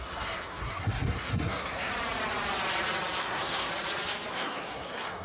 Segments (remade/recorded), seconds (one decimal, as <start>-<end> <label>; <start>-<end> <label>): 0.0-1.9 remade; 1.9-3.2 recorded; 3.2-3.7 remade; 3.7-4.3 recorded; 4.3-5.2 remade